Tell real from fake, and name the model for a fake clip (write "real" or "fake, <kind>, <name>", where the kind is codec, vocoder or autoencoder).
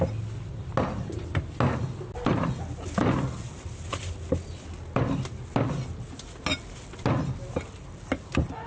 real